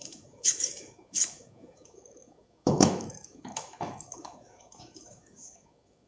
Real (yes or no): no